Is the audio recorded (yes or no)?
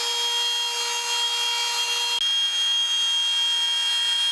yes